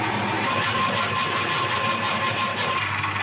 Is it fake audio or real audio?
fake